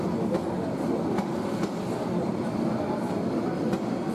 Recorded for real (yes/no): yes